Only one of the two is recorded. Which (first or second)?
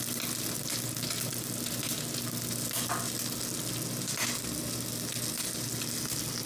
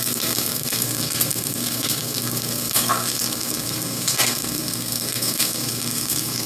first